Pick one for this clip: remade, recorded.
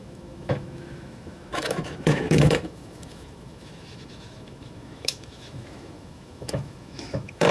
remade